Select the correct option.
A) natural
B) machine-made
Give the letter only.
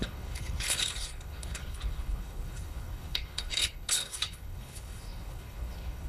B